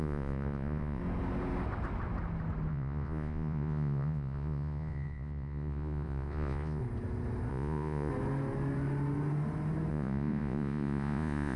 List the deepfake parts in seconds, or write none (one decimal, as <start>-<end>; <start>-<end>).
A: 0.0-1.0; 2.7-6.8; 7.5-8.1; 9.9-11.6